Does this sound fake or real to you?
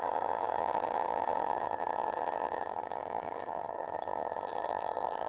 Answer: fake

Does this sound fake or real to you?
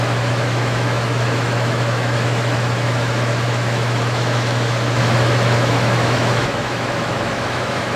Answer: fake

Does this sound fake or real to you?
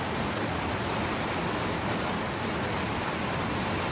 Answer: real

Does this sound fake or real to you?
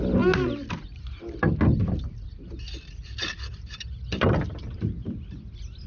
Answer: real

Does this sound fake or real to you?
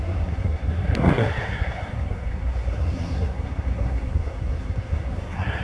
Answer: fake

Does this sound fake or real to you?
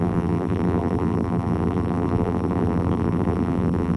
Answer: fake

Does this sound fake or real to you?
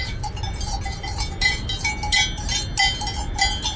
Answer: real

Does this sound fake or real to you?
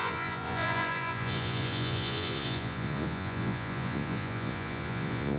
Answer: fake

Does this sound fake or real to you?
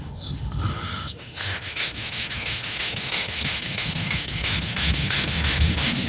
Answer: fake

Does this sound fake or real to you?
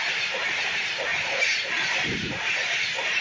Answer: fake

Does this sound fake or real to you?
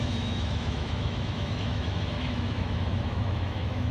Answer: fake